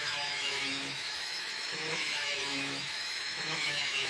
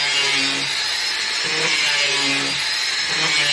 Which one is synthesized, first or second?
first